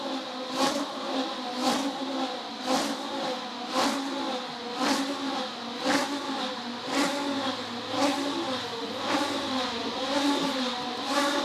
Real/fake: real